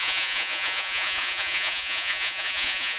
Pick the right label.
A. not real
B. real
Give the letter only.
A